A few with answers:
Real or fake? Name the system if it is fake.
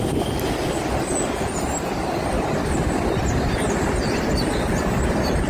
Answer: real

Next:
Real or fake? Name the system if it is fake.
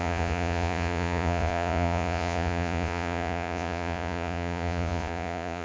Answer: fake, vocoder, Vocos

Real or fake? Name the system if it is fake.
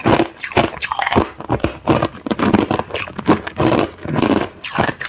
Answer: real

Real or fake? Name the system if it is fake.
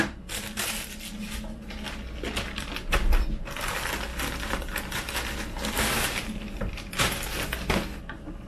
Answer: real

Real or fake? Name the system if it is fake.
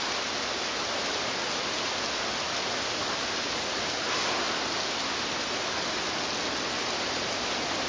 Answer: real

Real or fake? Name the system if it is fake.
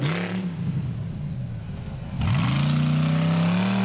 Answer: real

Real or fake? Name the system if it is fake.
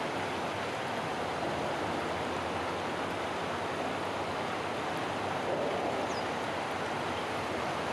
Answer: real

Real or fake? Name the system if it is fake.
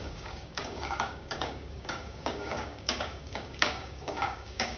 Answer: fake, codec, DAC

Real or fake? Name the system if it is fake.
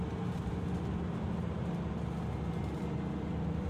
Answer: real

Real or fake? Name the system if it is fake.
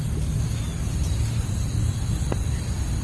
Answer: real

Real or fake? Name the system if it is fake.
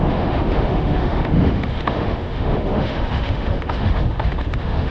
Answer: fake, autoencoder, DAC-VAE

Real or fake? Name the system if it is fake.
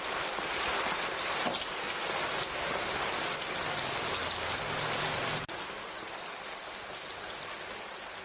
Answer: real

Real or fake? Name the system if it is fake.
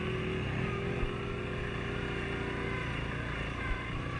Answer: real